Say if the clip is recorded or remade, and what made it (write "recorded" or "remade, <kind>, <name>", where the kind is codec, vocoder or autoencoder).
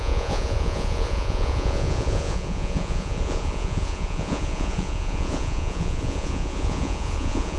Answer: remade, vocoder, Vocos